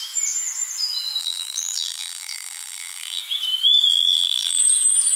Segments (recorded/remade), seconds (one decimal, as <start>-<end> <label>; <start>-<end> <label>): 0.0-1.2 recorded; 1.2-3.2 remade; 3.2-3.9 recorded; 3.9-4.6 remade; 4.6-5.2 recorded